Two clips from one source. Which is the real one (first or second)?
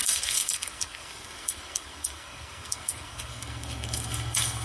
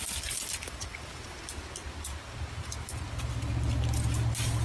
second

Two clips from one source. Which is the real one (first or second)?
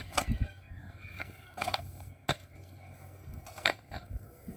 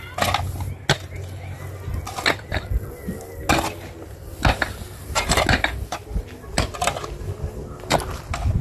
second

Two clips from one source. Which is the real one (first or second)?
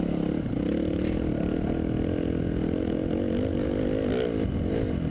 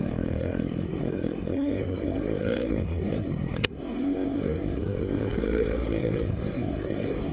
first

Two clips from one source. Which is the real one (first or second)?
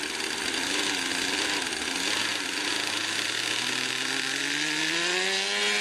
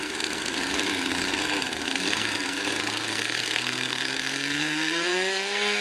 first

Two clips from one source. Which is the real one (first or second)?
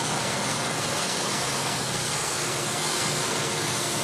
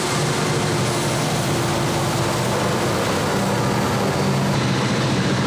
second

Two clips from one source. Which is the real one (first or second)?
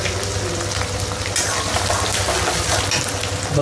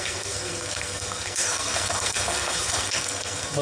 first